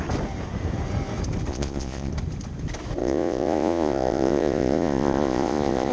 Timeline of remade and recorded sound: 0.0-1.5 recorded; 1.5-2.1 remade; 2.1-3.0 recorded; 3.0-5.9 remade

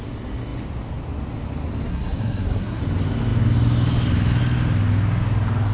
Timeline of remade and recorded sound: 0.0-1.9 recorded; 1.9-2.8 remade; 2.8-5.7 recorded

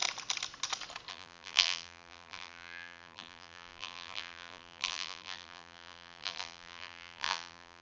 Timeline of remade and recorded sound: 0.0-1.1 recorded; 1.1-7.8 remade

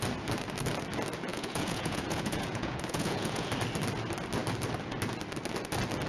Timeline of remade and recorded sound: 0.0-1.3 recorded; 1.3-3.5 remade; 3.5-6.1 recorded